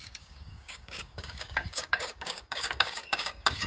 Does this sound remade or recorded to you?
remade